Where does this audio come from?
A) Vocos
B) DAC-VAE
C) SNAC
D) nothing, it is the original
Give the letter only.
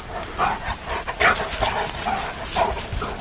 D